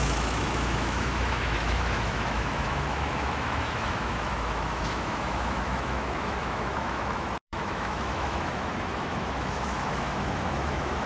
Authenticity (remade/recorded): remade